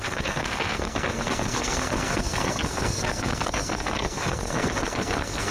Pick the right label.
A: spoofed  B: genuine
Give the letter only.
A